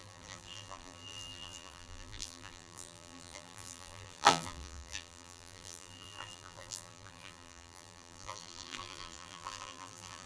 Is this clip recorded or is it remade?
remade